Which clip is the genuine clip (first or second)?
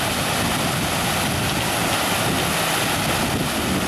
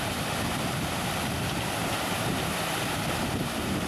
first